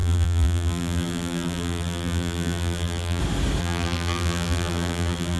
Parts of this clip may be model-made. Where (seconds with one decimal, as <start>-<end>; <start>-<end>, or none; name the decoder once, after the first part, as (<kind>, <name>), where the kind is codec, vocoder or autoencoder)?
0.0-3.2 (vocoder, BigVGAN v2); 3.6-5.4